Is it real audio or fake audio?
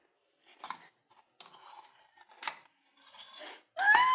real